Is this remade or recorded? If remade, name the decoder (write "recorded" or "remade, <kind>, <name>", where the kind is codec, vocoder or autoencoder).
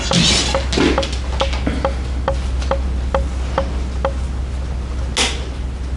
recorded